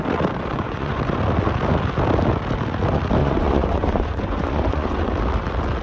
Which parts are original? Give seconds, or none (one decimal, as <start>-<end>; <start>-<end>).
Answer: 0.0-0.5; 1.0-3.2; 5.1-5.8